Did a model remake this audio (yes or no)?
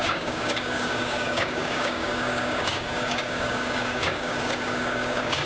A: yes